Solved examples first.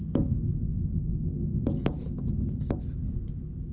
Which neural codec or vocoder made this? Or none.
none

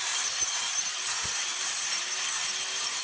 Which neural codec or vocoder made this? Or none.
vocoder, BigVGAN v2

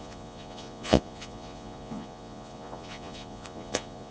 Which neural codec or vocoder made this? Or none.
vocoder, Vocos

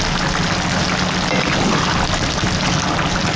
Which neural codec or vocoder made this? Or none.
none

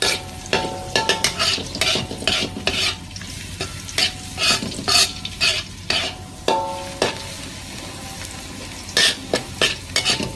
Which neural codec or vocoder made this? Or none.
none